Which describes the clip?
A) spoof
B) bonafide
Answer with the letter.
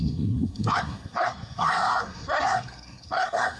A